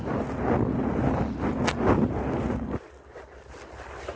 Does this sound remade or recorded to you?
recorded